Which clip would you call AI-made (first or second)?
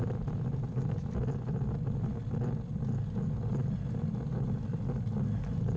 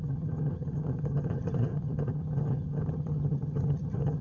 second